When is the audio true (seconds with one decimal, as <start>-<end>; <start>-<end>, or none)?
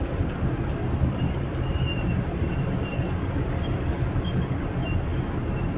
0.0-5.8